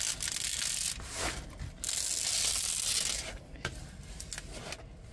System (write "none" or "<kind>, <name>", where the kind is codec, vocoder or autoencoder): none